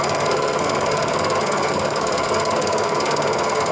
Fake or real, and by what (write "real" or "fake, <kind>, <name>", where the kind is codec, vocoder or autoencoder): fake, codec, SNAC